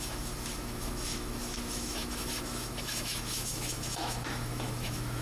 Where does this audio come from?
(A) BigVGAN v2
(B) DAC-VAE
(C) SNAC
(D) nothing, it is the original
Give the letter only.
B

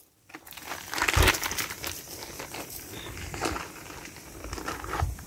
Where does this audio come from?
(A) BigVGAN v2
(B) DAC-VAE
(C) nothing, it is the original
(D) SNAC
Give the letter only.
C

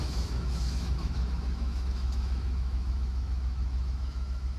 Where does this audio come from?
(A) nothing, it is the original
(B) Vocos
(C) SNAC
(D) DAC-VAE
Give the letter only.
D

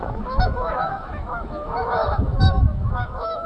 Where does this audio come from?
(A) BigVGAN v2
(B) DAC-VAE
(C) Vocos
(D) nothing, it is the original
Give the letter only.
B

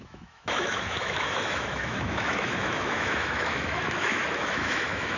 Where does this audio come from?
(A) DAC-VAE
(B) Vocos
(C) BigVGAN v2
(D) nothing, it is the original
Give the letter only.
A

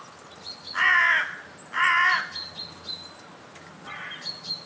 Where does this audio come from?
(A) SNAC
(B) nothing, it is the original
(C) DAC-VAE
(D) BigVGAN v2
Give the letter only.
B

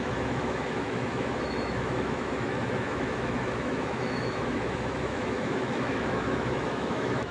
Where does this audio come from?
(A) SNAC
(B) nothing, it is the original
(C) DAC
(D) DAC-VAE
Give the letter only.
D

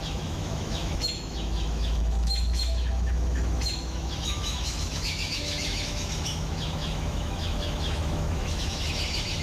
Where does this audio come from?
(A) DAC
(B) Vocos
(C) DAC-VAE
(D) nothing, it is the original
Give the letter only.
C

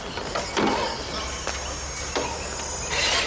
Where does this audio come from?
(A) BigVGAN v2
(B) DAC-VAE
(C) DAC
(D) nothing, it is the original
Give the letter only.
D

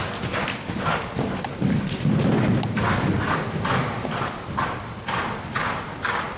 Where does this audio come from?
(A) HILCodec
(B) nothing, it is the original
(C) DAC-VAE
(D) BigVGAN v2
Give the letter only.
B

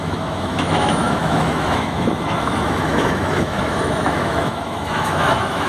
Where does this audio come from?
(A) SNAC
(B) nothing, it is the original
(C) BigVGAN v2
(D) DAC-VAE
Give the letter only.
D